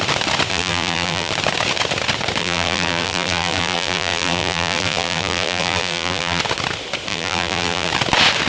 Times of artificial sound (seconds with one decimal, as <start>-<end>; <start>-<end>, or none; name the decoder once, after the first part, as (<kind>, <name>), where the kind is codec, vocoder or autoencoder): 0.5-1.3 (vocoder, BigVGAN v2); 2.4-6.4; 7.1-7.9